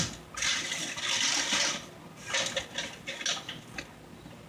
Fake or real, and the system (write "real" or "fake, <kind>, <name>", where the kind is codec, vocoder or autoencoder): real